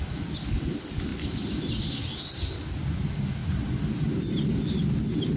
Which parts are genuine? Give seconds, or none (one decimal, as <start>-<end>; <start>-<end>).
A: 0.0-5.4